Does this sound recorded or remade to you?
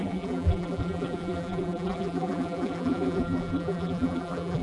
remade